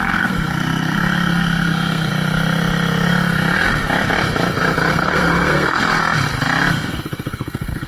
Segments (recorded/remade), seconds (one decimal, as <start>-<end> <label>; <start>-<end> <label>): 0.0-2.1 remade; 2.1-4.9 recorded; 4.9-6.0 remade; 6.0-6.7 recorded; 6.7-7.9 remade